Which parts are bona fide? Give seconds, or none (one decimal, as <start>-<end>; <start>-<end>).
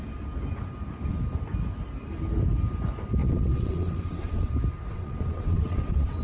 0.0-3.2; 4.5-4.9